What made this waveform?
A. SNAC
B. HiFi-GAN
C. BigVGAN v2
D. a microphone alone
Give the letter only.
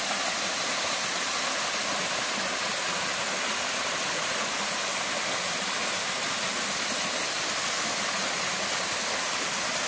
D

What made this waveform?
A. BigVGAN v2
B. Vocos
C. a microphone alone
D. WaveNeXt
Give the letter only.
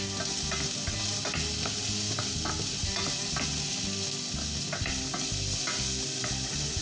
C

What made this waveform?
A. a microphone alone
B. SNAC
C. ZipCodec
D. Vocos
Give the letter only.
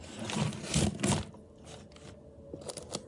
A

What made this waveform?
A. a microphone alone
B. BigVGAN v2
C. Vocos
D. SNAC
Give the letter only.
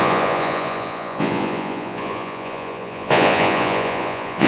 C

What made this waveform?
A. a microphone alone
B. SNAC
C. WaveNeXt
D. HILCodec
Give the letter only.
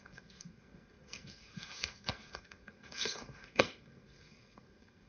B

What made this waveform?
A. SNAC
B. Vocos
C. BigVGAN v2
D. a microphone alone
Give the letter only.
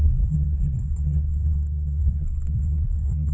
A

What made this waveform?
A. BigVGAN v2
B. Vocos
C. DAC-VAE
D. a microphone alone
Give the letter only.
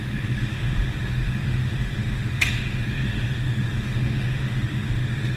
C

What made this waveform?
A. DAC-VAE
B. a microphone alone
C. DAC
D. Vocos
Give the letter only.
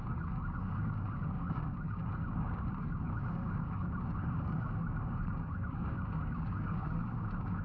C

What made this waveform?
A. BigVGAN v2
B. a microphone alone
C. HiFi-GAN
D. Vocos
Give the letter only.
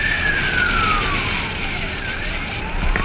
B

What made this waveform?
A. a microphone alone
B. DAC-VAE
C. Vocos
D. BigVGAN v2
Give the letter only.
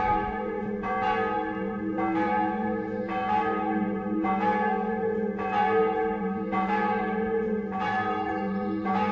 D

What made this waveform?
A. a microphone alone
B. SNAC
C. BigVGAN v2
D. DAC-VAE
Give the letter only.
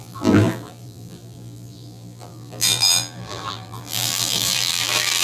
C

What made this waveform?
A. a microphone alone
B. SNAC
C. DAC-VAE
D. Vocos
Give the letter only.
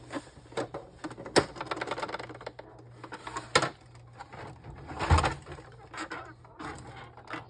A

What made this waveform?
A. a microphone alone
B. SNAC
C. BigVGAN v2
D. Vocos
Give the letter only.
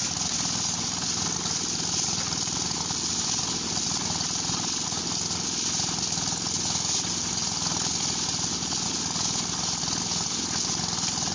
A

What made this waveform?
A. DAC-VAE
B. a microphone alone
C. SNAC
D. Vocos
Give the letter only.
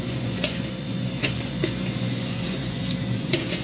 D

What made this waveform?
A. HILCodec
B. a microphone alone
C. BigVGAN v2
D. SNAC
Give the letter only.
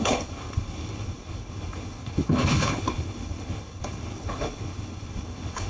A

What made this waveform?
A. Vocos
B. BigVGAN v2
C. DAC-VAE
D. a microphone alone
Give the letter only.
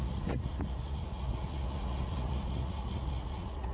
A